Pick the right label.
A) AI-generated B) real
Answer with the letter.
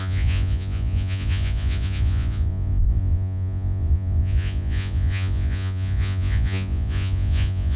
A